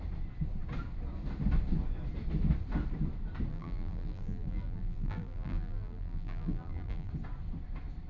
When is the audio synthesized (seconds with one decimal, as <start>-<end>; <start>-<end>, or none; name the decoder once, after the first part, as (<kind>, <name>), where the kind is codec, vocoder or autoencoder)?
3.5-7.1 (vocoder, BigVGAN v2)